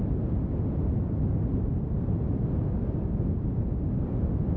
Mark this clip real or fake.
real